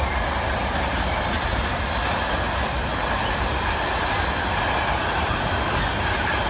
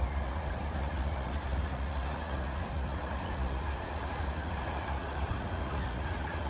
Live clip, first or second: first